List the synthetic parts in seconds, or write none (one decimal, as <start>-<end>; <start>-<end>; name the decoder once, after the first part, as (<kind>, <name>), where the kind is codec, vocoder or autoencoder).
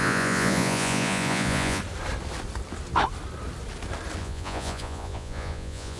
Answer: 0.0-1.8 (vocoder, Vocos); 4.2-6.0